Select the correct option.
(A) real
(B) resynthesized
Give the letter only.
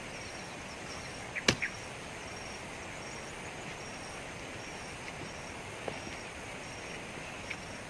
A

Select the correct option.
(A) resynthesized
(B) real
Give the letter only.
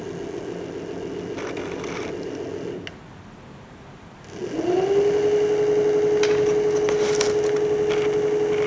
B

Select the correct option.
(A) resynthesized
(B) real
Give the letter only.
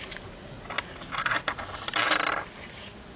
B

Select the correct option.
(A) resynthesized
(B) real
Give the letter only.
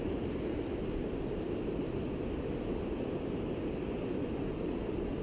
B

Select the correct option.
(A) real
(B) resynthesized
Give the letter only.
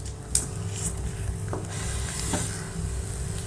A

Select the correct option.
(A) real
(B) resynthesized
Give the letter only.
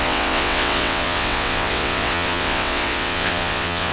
B